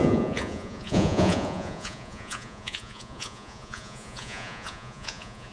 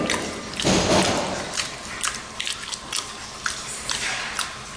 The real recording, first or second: second